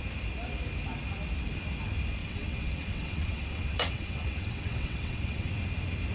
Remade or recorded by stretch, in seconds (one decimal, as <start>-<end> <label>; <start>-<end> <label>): 0.0-2.2 recorded; 2.2-5.5 remade; 5.5-6.1 recorded